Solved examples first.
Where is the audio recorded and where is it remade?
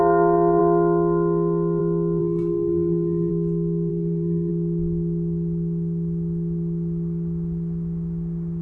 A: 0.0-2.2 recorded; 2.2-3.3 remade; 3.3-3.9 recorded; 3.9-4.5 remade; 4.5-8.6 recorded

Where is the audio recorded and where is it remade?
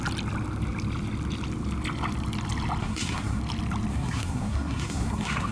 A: 0.0-2.8 recorded; 2.8-3.4 remade; 3.4-3.9 recorded; 3.9-5.5 remade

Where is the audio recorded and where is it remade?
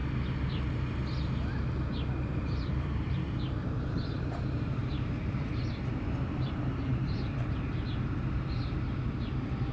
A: 0.0-2.1 recorded; 2.1-9.7 remade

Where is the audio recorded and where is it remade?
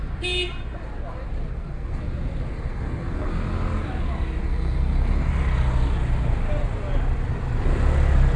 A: 0.0-1.5 recorded; 1.5-2.0 remade; 2.0-2.5 recorded; 2.5-3.3 remade; 3.3-4.4 recorded; 4.4-5.3 remade; 5.3-8.4 recorded